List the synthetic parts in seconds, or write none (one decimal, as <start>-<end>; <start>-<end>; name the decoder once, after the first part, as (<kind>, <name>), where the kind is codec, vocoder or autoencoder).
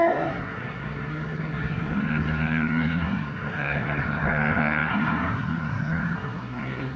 0.0-7.0 (codec, SNAC)